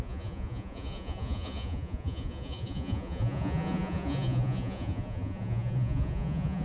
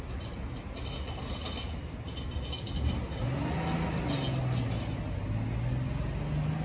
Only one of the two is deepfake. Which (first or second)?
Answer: first